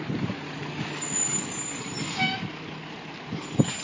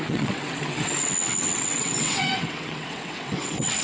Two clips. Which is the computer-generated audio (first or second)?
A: second